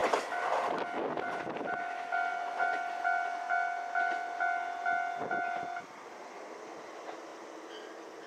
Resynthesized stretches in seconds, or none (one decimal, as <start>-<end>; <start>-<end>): 0.0-0.6

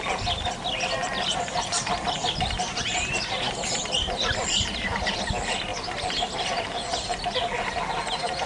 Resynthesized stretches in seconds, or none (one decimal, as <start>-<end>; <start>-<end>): 1.3-3.8

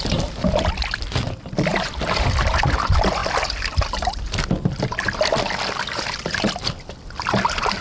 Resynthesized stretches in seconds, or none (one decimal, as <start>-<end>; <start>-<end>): 0.0-7.8

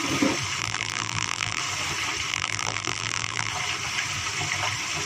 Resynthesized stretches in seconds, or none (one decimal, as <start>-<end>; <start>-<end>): 0.6-1.6; 2.3-3.5

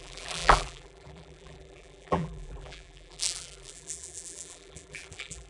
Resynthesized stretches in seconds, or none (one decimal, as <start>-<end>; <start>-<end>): 0.0-5.5

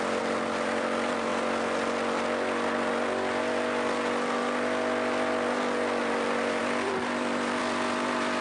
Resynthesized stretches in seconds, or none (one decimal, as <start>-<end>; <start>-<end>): 0.0-1.3; 6.0-8.4